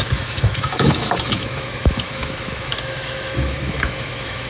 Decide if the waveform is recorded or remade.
remade